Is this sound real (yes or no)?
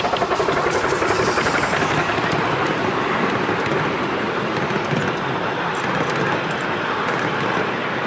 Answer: yes